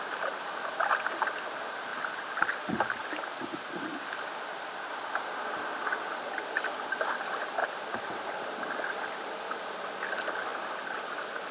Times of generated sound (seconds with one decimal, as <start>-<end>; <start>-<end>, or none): none